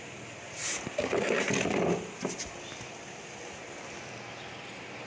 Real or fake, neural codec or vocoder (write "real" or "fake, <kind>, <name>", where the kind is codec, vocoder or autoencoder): real